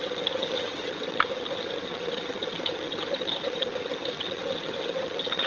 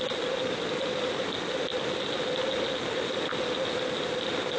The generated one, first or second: first